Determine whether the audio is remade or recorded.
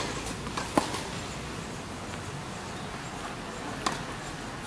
recorded